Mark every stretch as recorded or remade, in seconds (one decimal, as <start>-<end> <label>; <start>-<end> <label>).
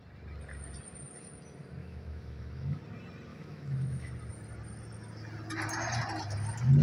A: 0.0-1.8 recorded; 1.8-2.8 remade; 2.8-3.3 recorded; 3.3-4.1 remade; 4.1-6.8 recorded